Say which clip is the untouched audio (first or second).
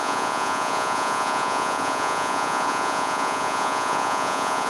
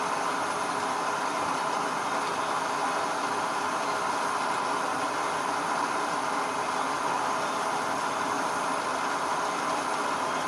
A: second